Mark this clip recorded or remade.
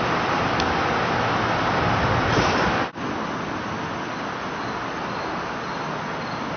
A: recorded